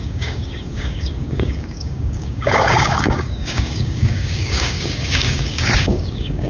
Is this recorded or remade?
remade